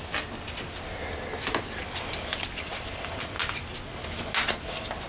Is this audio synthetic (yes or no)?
no